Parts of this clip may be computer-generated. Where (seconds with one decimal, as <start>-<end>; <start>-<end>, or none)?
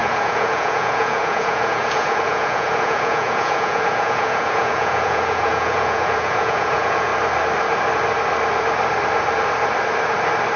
0.0-7.1